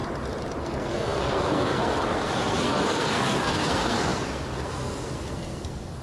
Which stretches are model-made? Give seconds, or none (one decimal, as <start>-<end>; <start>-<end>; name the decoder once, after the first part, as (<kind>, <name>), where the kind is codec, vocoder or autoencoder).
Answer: 0.6-6.0 (codec, SNAC)